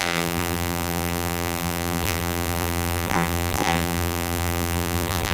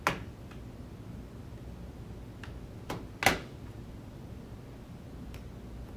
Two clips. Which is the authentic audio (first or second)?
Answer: second